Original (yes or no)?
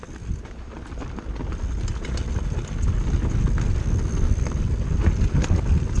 yes